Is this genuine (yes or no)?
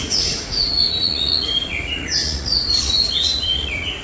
no